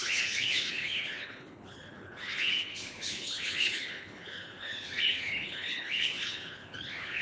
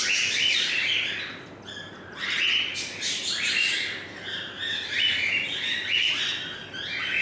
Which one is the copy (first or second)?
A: first